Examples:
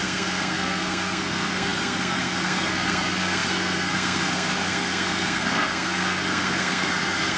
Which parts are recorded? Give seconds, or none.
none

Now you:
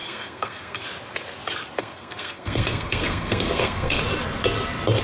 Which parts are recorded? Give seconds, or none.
0.8-1.8; 4.0-5.0

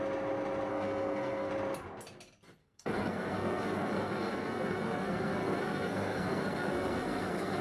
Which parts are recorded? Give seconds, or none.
0.0-0.7; 1.5-2.6

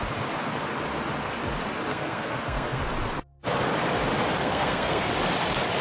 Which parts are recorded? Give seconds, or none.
0.0-1.9; 2.8-4.4; 5.1-5.8

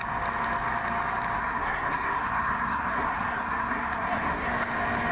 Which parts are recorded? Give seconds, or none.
0.0-1.4; 4.5-5.1

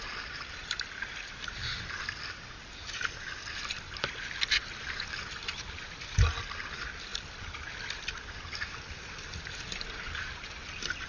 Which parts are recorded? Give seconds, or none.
0.0-11.1